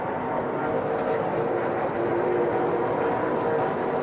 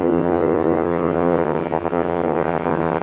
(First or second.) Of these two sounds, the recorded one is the first